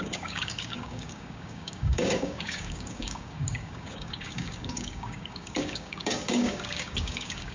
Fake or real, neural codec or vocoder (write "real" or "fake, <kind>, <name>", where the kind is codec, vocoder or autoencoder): fake, codec, DAC